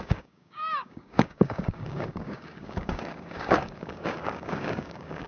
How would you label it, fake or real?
fake